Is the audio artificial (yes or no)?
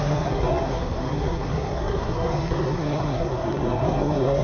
yes